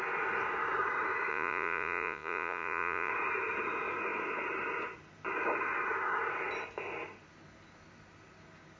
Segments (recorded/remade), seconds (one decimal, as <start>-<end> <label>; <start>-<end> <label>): 0.0-1.3 recorded; 1.3-3.1 remade; 3.1-8.8 recorded

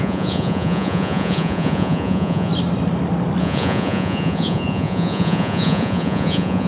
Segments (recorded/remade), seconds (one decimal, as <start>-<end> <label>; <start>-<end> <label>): 0.0-2.5 remade; 2.5-3.4 recorded; 3.4-6.7 remade